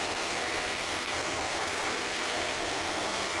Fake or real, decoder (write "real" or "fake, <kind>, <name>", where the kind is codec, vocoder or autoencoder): fake, codec, SNAC